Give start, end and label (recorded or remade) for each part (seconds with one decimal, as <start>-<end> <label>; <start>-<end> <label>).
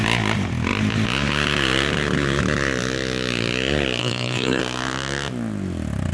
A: 0.0-4.0 recorded; 4.0-4.6 remade; 4.6-6.1 recorded